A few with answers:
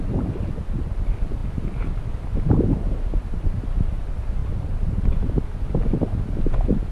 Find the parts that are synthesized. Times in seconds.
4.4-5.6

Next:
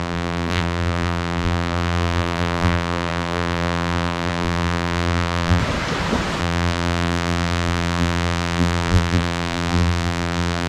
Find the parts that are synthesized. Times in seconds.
0.0-5.6; 6.4-10.7